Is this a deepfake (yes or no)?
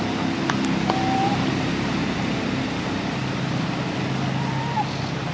no